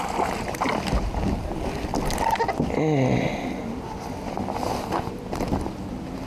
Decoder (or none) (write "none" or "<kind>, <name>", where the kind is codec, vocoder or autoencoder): none